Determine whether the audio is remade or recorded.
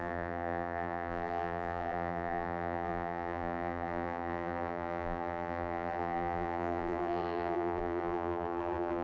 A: remade